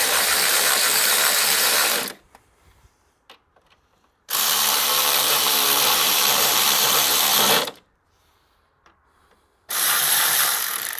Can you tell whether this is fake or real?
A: fake